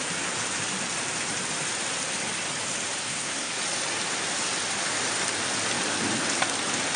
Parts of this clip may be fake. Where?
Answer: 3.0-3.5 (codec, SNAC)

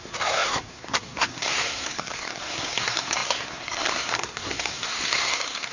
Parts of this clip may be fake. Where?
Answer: 0.0-5.7 (codec, SNAC)

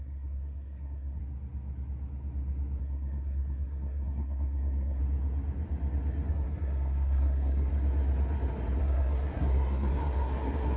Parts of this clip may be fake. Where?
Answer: 0.0-1.2 (codec, SNAC); 2.8-5.0; 6.3-7.7; 8.8-10.8